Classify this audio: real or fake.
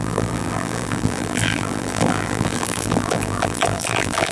fake